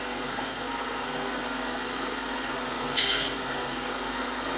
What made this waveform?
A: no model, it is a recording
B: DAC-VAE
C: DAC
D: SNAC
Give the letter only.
D